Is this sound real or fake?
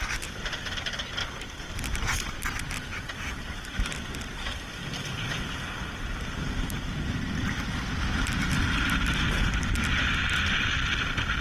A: real